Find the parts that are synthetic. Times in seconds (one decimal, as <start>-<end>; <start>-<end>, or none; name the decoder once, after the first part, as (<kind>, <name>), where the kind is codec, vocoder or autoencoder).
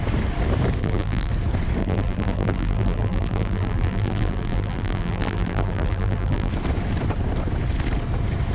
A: 0.8-1.3 (vocoder, BigVGAN v2); 1.8-6.5